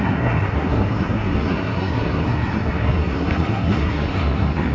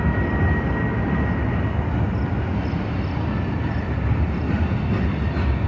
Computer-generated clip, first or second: first